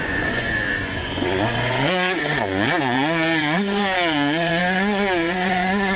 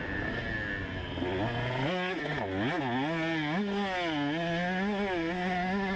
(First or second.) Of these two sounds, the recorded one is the second